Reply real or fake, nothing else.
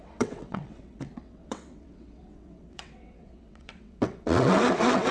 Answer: fake